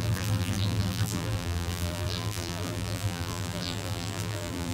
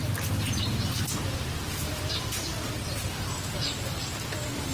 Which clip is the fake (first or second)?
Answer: first